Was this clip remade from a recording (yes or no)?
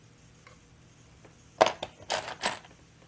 no